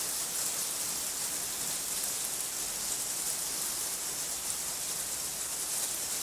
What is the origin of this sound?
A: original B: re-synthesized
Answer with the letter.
A